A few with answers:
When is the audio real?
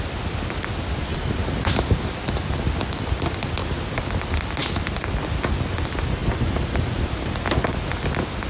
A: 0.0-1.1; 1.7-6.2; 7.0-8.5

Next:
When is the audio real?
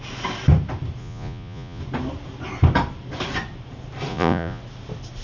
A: 0.0-1.0; 1.8-4.1; 4.6-5.2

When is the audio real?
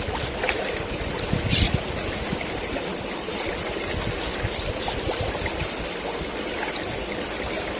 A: 0.0-7.8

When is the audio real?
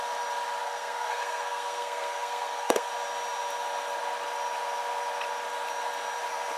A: 0.0-0.6; 2.9-6.6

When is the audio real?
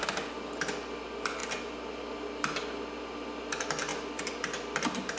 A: 0.0-5.2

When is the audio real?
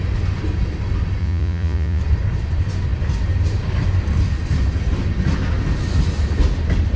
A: 0.0-1.2; 2.0-7.0